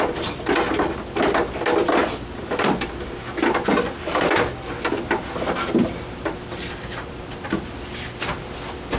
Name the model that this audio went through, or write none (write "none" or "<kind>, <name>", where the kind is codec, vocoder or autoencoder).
none